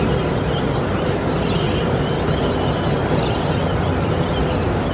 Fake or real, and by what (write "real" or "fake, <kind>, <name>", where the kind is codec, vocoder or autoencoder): real